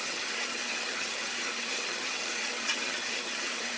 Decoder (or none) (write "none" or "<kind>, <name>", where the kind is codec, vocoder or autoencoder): vocoder, HiFi-GAN